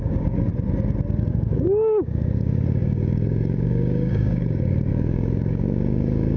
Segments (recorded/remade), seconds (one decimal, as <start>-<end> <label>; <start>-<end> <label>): 0.0-0.5 remade; 0.5-1.3 recorded; 1.3-6.4 remade